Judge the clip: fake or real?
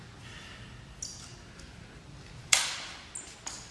real